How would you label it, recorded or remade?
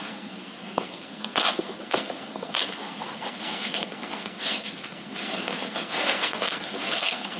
remade